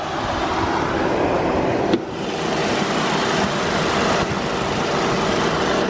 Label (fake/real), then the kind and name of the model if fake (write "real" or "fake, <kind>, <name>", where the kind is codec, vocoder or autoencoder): real